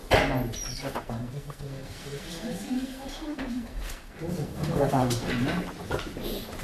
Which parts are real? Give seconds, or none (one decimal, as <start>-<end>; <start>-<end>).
0.0-0.7; 5.4-6.6